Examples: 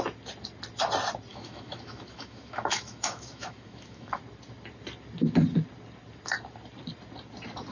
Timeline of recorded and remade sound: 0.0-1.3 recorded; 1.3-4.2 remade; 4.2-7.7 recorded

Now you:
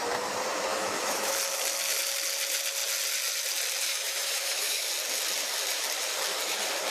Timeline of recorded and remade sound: 0.0-0.7 recorded; 0.7-1.3 remade; 1.3-3.9 recorded; 3.9-4.9 remade; 4.9-6.9 recorded

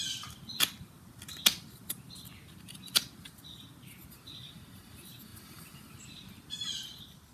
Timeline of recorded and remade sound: 0.0-7.3 recorded